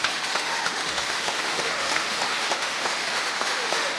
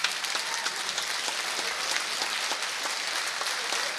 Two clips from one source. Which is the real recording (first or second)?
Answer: second